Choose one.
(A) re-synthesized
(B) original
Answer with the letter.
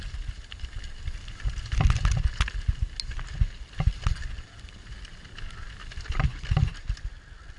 B